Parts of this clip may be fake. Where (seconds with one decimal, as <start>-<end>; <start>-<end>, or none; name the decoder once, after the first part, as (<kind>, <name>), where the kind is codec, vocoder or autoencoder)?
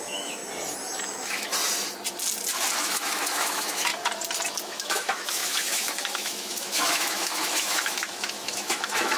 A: 0.0-0.4 (autoencoder, DAC-VAE); 1.0-1.5; 2.8-3.9; 4.6-9.2